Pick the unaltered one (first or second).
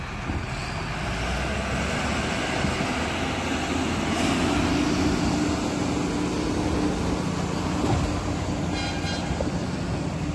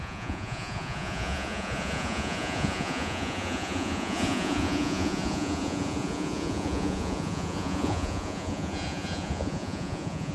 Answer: first